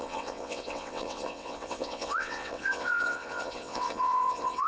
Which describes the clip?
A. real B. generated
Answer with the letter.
B